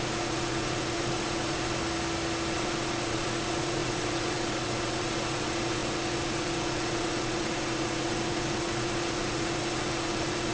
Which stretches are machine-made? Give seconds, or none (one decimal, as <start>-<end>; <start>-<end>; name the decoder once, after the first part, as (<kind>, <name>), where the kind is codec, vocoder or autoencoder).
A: 0.0-1.8 (vocoder, Vocos); 2.5-10.5